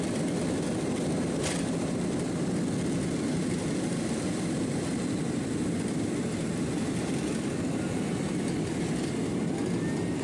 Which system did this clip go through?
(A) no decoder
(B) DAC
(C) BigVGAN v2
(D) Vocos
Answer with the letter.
A